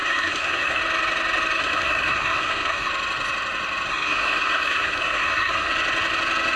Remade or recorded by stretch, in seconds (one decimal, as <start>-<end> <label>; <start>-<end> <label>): 0.0-0.8 remade; 0.8-1.6 recorded; 1.6-2.9 remade; 2.9-3.9 recorded; 3.9-5.7 remade; 5.7-6.6 recorded